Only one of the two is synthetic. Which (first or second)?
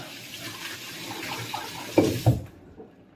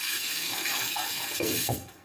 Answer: second